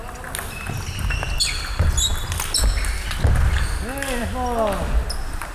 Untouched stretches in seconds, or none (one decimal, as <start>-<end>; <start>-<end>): 0.0-5.5

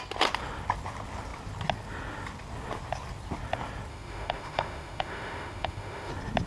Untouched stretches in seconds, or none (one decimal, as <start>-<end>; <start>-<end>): 0.0-3.9; 6.1-6.5